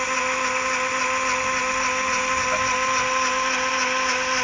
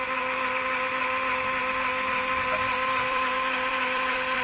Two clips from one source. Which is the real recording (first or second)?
first